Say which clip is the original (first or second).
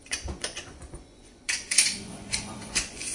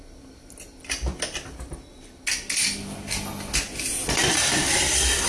second